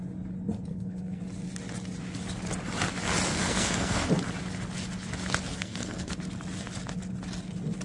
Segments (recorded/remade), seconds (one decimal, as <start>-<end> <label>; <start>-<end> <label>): 0.0-0.7 recorded; 0.7-1.2 remade; 1.2-3.3 recorded; 3.3-4.1 remade; 4.1-5.5 recorded; 5.5-6.1 remade; 6.1-7.8 recorded